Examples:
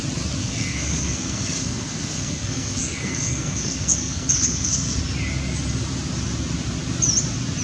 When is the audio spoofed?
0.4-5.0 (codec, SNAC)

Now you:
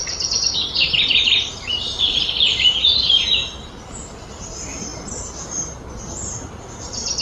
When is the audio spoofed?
none

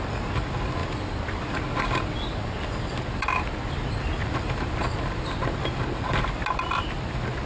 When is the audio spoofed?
none

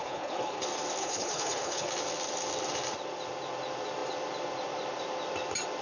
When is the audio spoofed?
0.0-0.6 (codec, HILCodec); 1.0-1.9

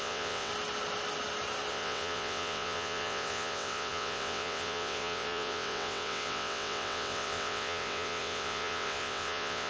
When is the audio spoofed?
0.0-0.5 (vocoder, WaveNeXt); 1.7-9.7

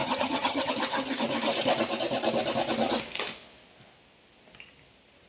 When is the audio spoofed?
0.0-0.7 (vocoder, HiFi-GAN)